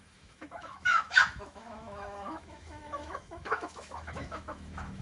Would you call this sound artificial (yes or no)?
yes